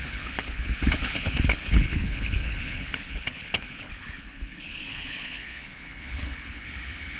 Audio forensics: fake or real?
fake